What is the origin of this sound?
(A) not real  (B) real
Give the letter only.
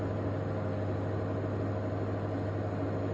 B